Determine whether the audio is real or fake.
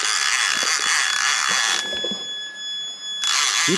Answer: real